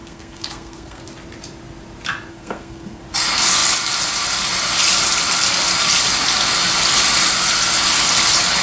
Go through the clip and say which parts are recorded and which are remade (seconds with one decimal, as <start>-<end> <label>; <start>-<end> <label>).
0.0-1.0 remade; 1.0-2.3 recorded; 2.3-3.0 remade; 3.0-8.6 recorded